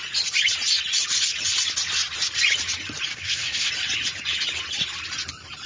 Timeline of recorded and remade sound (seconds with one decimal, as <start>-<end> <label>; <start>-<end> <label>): 0.0-3.1 recorded; 3.1-3.7 remade; 3.7-5.7 recorded